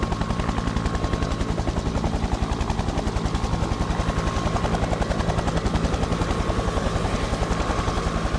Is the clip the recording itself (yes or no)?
yes